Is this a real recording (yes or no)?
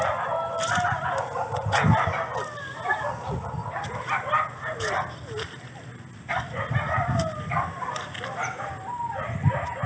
yes